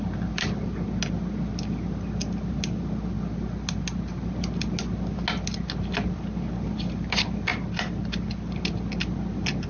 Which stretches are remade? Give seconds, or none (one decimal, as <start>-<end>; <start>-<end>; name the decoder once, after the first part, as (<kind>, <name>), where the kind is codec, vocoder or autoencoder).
none